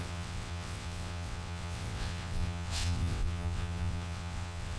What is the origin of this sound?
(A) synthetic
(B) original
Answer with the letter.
A